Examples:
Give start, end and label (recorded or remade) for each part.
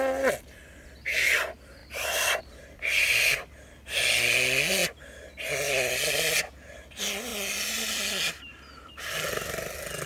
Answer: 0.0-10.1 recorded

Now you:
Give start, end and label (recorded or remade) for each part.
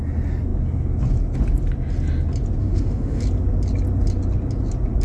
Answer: 0.0-2.6 recorded; 2.6-3.2 remade; 3.2-5.0 recorded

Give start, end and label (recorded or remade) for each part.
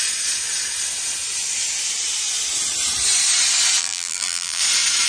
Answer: 0.0-3.8 recorded; 3.8-4.6 remade; 4.6-5.1 recorded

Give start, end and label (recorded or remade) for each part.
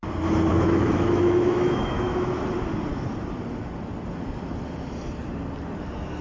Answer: 0.0-0.5 recorded; 0.5-2.4 remade; 2.4-6.2 recorded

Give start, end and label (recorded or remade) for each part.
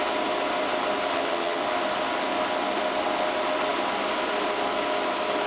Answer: 0.0-1.1 recorded; 1.1-1.6 remade; 1.6-5.5 recorded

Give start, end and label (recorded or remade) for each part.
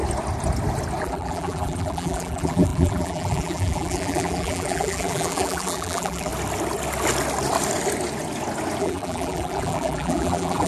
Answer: 0.0-1.0 recorded; 1.0-6.3 remade; 6.3-8.8 recorded; 8.8-10.7 remade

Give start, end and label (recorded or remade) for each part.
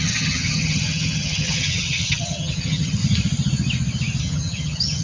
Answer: 0.0-3.0 remade; 3.0-4.2 recorded; 4.2-5.0 remade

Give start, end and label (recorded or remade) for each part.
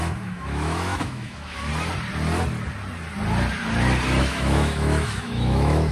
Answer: 0.0-1.7 remade; 1.7-4.2 recorded; 4.2-5.9 remade